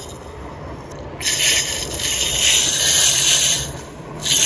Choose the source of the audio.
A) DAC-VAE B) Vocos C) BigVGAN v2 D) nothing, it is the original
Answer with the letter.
D